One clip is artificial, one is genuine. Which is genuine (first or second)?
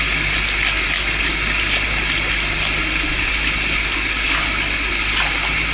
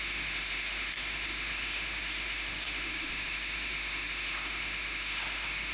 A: first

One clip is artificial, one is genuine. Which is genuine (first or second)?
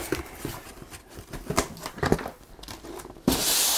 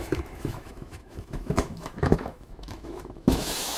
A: first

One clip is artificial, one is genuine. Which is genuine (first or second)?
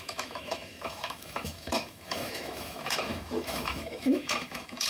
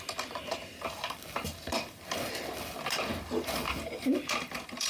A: second